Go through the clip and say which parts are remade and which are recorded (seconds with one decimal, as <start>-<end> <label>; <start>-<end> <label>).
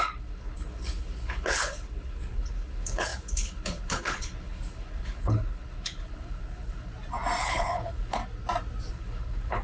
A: 0.0-6.9 remade; 6.9-7.4 recorded; 7.4-8.2 remade; 8.2-8.9 recorded; 8.9-9.6 remade